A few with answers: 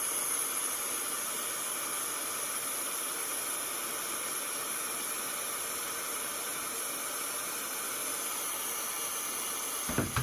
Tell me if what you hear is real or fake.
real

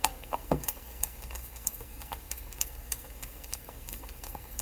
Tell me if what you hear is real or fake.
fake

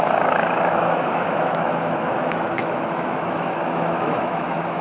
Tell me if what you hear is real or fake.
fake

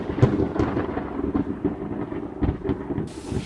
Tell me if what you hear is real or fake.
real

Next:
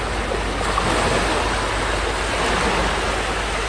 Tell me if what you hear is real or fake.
real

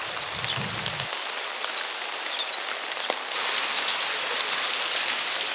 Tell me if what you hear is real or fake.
real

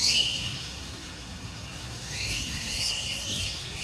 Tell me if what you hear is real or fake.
fake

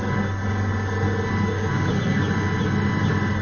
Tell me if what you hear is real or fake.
real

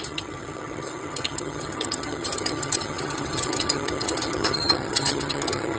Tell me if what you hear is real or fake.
fake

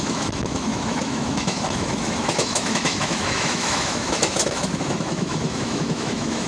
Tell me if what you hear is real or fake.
fake